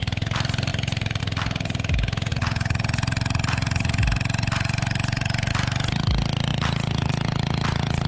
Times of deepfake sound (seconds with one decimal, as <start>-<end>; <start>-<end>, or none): none